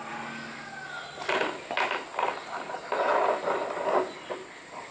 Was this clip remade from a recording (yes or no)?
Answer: no